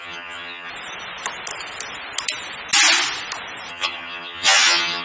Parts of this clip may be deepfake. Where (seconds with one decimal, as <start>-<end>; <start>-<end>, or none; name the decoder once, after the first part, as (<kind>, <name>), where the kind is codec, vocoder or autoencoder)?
0.0-0.7 (vocoder, HiFi-GAN); 3.7-5.0